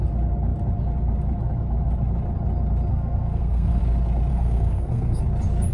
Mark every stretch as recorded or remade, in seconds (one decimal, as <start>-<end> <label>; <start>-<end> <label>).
0.0-2.9 recorded; 2.9-3.8 remade; 3.8-4.3 recorded; 4.3-5.2 remade; 5.2-5.7 recorded